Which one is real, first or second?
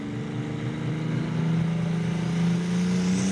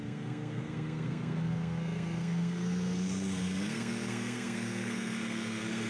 first